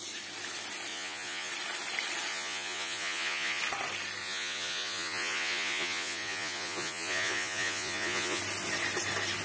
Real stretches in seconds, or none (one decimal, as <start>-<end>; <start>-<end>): 0.0-0.9; 1.5-2.3; 3.6-4.2; 8.4-9.4